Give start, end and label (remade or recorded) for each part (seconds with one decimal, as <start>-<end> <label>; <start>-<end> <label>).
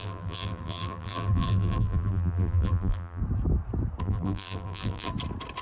0.0-3.2 remade; 3.2-4.0 recorded; 4.0-5.1 remade; 5.1-5.6 recorded